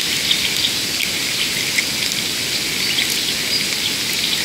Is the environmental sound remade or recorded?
recorded